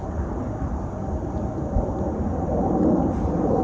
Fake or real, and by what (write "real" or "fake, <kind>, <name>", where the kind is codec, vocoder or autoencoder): fake, vocoder, BigVGAN v2